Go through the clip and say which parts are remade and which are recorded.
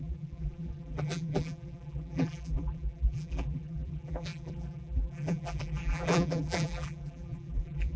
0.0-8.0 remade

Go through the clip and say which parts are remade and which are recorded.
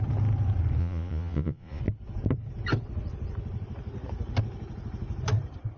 0.0-0.8 recorded; 0.8-1.8 remade; 1.8-5.8 recorded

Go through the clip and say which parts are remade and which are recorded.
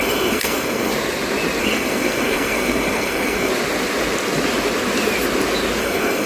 0.0-0.9 remade; 0.9-1.6 recorded; 1.6-3.5 remade; 3.5-5.8 recorded; 5.8-6.3 remade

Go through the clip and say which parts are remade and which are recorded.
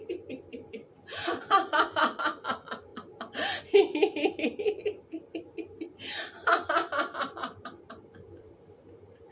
0.0-9.3 recorded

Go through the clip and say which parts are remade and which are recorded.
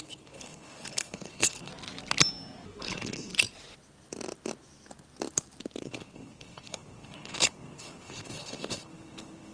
0.0-1.7 remade; 1.7-2.8 recorded; 2.8-3.3 remade; 3.3-5.8 recorded; 5.8-9.5 remade